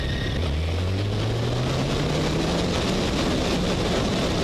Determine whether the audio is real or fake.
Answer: real